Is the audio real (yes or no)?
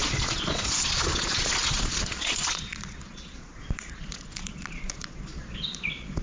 no